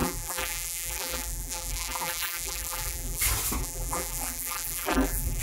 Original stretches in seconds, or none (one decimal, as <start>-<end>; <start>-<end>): 3.2-3.6